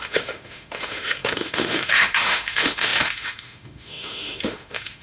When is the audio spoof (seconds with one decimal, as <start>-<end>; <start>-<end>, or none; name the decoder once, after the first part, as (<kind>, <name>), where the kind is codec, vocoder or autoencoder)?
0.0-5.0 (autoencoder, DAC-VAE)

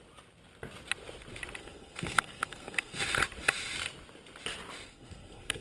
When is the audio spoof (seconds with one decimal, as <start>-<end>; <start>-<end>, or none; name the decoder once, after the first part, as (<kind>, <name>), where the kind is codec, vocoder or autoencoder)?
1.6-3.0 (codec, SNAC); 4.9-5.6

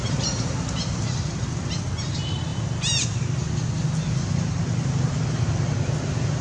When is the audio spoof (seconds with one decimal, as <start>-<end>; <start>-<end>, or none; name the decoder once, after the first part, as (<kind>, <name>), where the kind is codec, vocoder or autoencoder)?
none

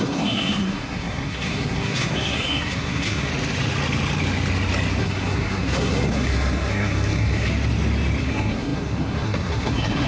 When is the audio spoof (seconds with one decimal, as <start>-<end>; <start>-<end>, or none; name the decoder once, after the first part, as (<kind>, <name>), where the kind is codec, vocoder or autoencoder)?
0.0-3.3 (codec, SNAC); 5.0-7.5; 8.2-10.1

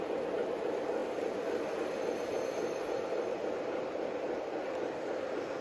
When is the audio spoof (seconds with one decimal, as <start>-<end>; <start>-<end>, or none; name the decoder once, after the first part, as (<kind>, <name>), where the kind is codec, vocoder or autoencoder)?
none

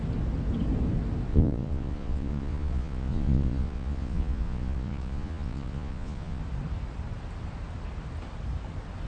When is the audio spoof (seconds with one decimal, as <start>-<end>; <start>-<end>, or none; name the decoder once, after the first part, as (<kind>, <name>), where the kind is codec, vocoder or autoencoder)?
1.3-6.4 (vocoder, Vocos)